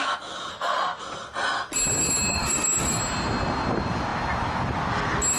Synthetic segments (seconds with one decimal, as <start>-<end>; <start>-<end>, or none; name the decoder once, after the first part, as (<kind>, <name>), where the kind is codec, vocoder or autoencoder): 0.5-1.0 (autoencoder, DAC-VAE); 2.3-3.0